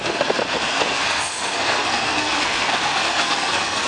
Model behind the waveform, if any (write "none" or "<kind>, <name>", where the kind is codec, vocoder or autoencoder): codec, SNAC